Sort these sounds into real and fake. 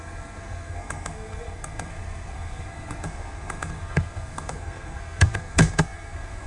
fake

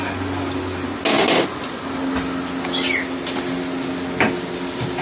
real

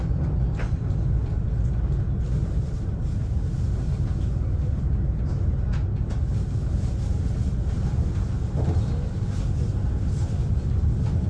real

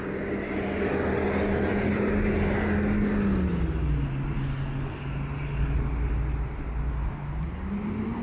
real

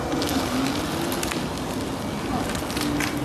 real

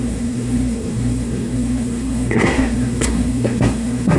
fake